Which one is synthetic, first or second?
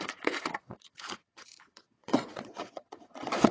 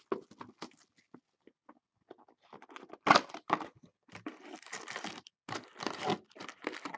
first